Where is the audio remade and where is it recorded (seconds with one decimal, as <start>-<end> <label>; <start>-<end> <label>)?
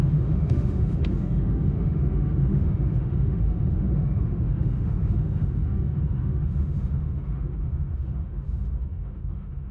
0.0-9.7 remade